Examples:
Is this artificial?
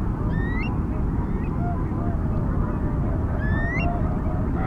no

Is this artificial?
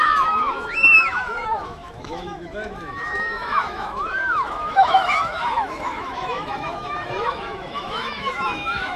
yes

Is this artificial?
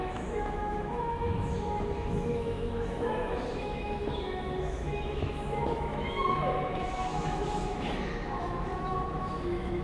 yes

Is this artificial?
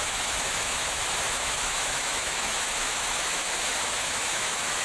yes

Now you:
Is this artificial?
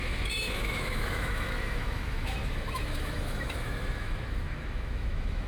yes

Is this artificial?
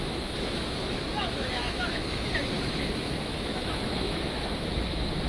yes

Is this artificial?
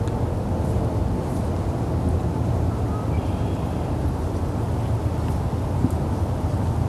no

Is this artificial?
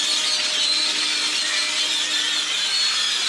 no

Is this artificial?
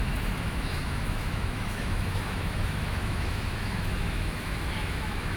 yes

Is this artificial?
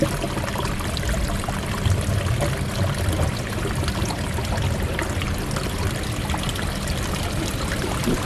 no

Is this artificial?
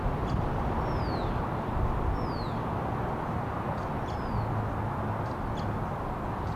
no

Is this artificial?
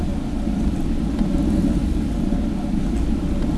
no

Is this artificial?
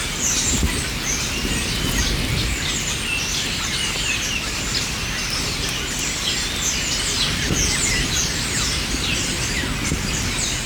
no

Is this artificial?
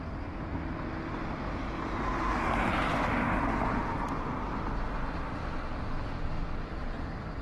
no